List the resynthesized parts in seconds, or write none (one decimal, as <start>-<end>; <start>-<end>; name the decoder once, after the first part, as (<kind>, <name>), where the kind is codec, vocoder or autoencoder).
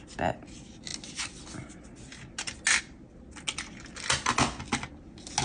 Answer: none